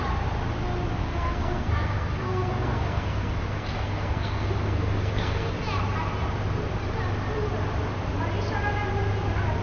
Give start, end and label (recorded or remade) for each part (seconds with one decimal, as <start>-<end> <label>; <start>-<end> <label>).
0.0-1.0 recorded; 1.0-5.5 remade; 5.5-9.6 recorded